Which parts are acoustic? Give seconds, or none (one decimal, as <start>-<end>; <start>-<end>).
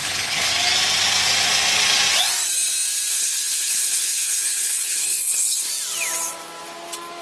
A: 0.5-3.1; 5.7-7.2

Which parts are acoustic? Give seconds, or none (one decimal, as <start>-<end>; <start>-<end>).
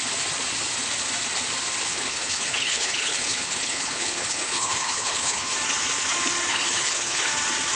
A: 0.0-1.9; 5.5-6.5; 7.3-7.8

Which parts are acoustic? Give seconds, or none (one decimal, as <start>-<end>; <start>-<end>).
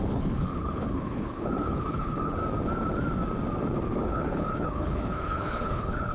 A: 2.4-3.7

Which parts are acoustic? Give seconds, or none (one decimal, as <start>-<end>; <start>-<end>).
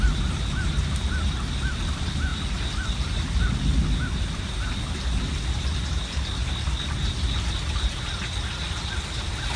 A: 0.0-9.6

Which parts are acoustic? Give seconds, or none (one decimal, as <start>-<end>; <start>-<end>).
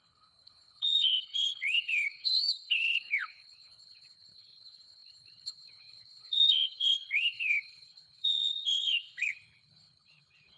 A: none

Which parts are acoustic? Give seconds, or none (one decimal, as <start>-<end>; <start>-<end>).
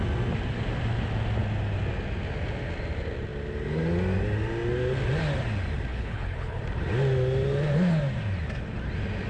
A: 0.0-5.9; 6.6-9.3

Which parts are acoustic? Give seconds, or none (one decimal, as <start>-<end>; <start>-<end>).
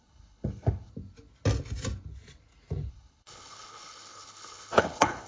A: 0.9-2.9